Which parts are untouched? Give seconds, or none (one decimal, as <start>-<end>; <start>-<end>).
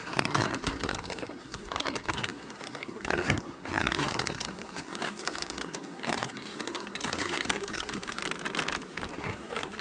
8.2-9.1